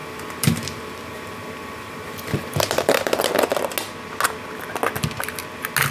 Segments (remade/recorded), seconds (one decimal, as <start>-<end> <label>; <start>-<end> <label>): 0.0-3.2 remade; 3.2-5.9 recorded